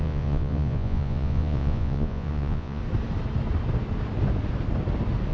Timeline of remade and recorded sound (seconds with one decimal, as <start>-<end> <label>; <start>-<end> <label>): 0.0-2.8 remade; 2.8-5.3 recorded